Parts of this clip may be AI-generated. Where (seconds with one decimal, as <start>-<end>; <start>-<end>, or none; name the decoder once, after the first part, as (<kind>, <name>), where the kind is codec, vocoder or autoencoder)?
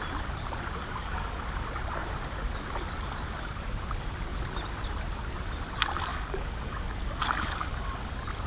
0.8-1.4 (codec, DAC); 6.1-8.1